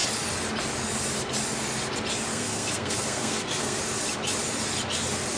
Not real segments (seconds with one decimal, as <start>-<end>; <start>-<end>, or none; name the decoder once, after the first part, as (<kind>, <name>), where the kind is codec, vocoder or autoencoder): 2.3-3.8 (codec, SNAC)